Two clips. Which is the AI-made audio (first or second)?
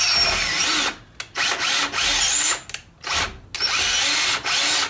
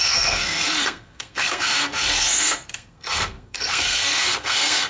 second